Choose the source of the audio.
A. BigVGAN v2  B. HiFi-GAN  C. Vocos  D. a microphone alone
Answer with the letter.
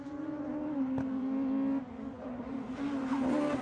A